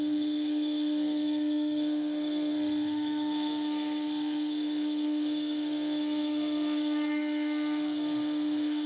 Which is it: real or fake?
fake